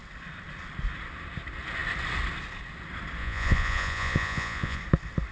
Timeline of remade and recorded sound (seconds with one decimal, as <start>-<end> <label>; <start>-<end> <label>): 0.0-3.2 recorded; 3.2-4.8 remade; 4.8-5.3 recorded